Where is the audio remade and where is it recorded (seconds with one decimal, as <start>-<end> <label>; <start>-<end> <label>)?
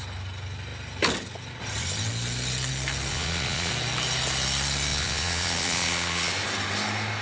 0.0-3.1 recorded; 3.1-3.7 remade; 3.7-4.9 recorded; 4.9-6.3 remade; 6.3-7.2 recorded